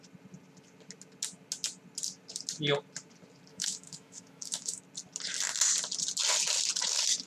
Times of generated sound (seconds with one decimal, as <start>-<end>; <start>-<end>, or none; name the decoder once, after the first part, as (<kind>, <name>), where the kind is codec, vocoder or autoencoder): 3.5-4.8 (autoencoder, DAC-VAE)